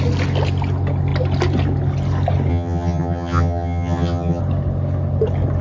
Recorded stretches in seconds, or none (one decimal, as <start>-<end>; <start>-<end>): 0.0-2.5; 4.4-5.6